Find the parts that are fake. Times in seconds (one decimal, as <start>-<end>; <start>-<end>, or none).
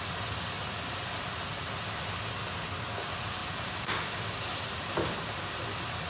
3.4-5.2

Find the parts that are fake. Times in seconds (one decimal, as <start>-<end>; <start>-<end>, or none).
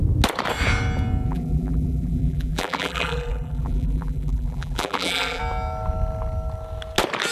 1.3-5.4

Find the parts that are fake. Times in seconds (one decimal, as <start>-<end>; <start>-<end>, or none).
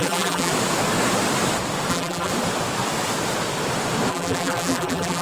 0.0-0.5; 1.9-2.3; 4.1-5.2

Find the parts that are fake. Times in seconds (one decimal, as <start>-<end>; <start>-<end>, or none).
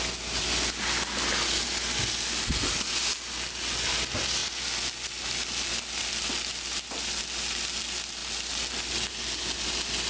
none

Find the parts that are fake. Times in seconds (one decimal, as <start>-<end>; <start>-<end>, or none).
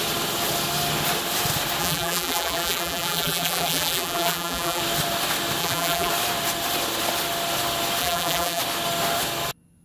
1.8-4.8; 5.6-6.1; 8.0-8.6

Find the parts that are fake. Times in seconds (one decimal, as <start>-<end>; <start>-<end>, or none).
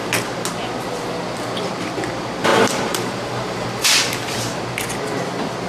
2.5-4.4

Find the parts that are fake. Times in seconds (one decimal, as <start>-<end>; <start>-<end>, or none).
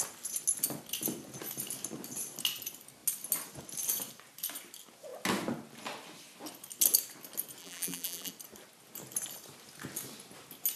7.6-8.3